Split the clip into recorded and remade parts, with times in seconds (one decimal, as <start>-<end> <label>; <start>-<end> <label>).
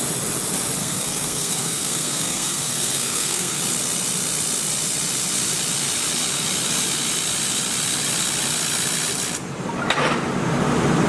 0.0-0.8 recorded; 0.8-3.6 remade; 3.6-11.1 recorded